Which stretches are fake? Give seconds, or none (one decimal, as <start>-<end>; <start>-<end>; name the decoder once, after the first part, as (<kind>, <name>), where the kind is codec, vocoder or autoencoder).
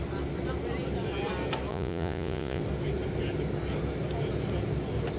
1.7-2.6 (vocoder, Vocos)